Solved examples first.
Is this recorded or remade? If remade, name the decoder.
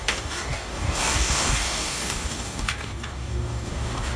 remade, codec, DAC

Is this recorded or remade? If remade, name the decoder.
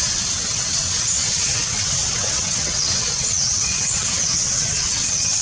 remade, vocoder, WaveNeXt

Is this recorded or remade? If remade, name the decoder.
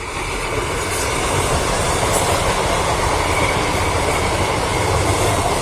recorded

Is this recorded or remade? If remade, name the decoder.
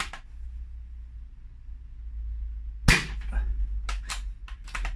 recorded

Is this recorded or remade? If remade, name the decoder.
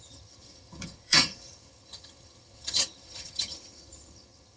remade, vocoder, HiFi-GAN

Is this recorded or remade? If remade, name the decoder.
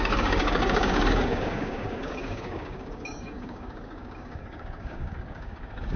remade, codec, DAC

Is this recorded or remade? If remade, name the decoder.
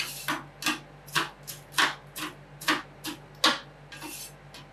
recorded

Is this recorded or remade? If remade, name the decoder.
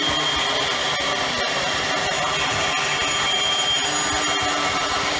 recorded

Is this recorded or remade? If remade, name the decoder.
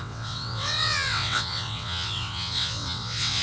remade, vocoder, WaveNeXt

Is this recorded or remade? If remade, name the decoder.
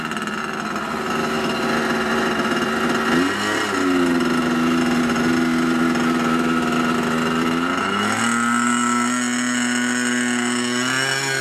recorded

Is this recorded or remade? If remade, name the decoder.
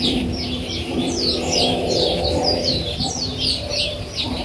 remade, vocoder, BigVGAN v2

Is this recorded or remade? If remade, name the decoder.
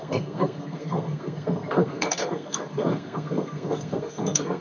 remade, codec, SNAC